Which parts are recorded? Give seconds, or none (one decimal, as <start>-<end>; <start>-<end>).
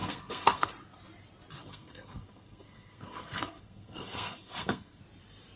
0.7-1.6; 5.0-5.6